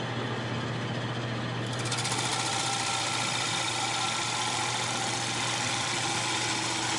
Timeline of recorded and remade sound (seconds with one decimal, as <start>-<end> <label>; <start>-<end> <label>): 0.0-7.0 recorded